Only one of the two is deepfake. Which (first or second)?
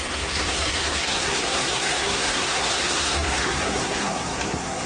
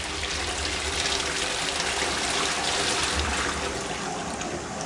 first